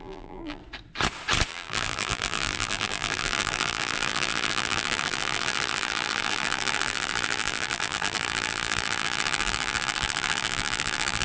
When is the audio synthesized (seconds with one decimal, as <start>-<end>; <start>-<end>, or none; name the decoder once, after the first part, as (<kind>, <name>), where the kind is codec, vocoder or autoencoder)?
0.0-0.6 (vocoder, BigVGAN v2); 1.5-11.2